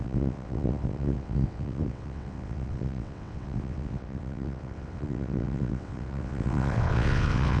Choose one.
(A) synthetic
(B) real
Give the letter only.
A